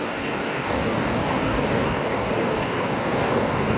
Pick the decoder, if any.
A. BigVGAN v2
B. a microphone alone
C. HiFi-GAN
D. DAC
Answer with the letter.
D